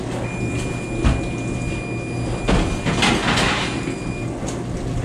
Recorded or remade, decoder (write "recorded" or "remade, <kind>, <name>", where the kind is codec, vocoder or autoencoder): recorded